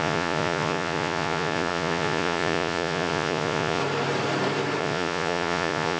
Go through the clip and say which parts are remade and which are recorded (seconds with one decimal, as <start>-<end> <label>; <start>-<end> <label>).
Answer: 0.0-3.8 remade; 3.8-4.8 recorded; 4.8-6.0 remade